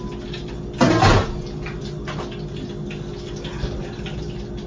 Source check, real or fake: real